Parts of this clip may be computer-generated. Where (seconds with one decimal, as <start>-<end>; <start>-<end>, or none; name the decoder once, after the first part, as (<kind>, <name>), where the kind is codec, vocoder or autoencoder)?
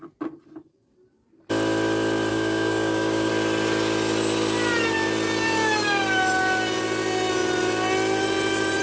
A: 2.3-3.3 (codec, DAC)